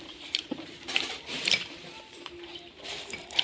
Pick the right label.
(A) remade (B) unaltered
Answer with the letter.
A